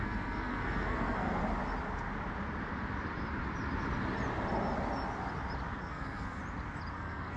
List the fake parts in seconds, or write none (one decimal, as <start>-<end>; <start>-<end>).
0.0-1.4; 5.8-6.4; 6.9-7.4